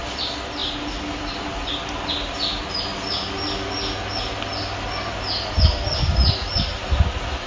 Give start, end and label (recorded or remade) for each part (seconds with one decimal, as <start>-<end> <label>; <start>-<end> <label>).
0.0-7.5 recorded

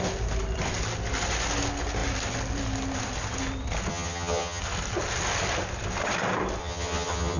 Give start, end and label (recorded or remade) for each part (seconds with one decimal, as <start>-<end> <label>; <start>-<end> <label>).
0.0-3.9 recorded; 3.9-4.6 remade; 4.6-6.6 recorded; 6.6-7.4 remade

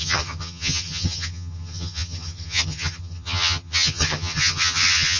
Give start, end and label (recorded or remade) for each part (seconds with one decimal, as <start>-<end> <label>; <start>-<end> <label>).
0.0-5.2 remade